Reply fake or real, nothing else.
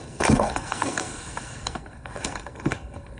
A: fake